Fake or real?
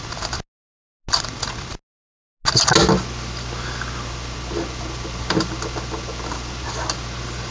real